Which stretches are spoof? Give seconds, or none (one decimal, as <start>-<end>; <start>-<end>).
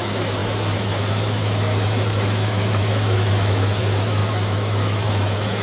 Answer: 0.0-5.6